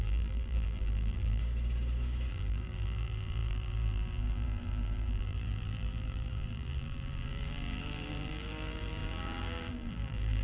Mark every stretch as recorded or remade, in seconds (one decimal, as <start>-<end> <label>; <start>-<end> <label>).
0.0-1.4 remade; 1.4-2.3 recorded; 2.3-10.4 remade